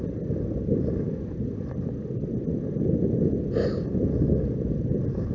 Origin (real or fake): real